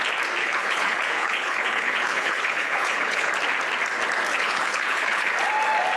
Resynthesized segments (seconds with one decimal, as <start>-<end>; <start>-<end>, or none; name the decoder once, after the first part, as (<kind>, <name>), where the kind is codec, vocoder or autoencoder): 0.4-3.3 (codec, HILCodec); 4.3-5.3